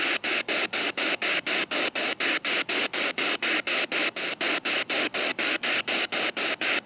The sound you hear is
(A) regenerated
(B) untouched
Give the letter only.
B